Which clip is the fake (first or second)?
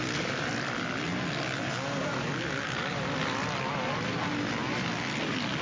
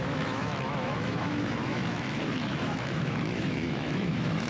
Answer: second